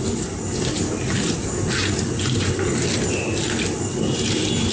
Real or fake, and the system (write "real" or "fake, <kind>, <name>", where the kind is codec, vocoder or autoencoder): real